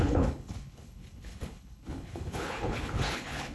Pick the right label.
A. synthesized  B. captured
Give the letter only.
A